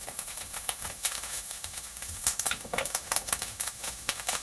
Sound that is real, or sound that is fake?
fake